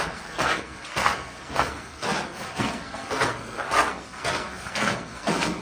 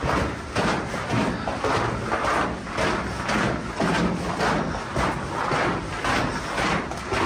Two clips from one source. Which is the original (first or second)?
second